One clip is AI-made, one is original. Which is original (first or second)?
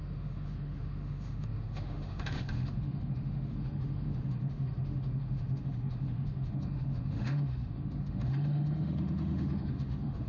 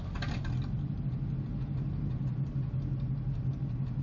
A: second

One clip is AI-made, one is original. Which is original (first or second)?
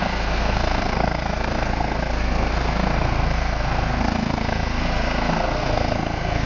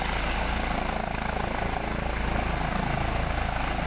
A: second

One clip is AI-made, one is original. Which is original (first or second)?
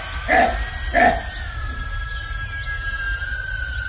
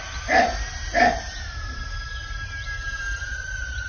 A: first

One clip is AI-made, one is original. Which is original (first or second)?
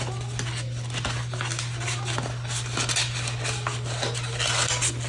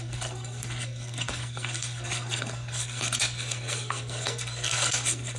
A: first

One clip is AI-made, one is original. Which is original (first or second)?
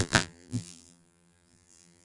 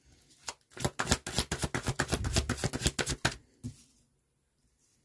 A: second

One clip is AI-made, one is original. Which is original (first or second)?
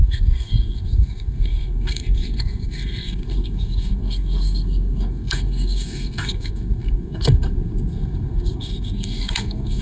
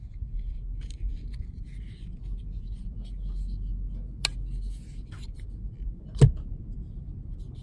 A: second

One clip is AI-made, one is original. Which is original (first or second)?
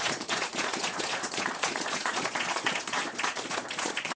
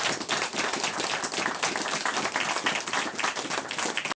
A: second